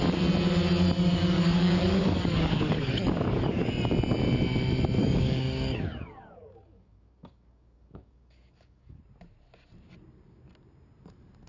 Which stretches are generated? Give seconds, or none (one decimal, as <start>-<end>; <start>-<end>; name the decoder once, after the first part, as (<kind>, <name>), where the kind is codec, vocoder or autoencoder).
1.1-3.7 (codec, DAC); 5.0-9.0